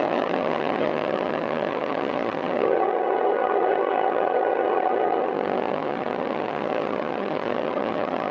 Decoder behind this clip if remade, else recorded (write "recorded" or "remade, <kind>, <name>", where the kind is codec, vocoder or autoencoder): remade, vocoder, HiFi-GAN